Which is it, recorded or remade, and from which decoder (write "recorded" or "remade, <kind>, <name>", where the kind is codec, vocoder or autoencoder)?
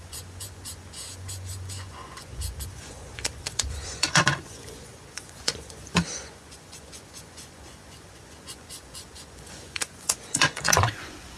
remade, vocoder, Vocos